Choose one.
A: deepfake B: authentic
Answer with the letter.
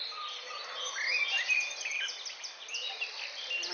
B